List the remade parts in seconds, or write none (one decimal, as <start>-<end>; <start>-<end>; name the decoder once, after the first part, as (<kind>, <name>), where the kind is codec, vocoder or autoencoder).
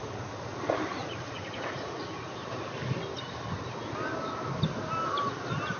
1.0-2.2 (vocoder, Vocos)